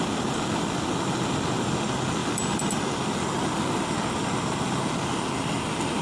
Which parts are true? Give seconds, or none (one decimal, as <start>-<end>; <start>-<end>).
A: 0.0-6.0